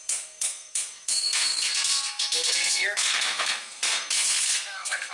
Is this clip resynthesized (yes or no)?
yes